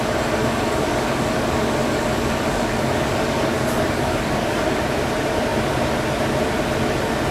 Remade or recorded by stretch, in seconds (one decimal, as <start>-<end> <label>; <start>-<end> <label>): 0.0-0.4 recorded; 0.4-4.8 remade; 4.8-7.3 recorded